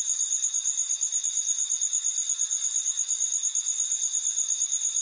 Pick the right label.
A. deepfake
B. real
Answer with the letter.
B